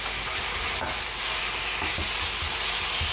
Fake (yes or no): no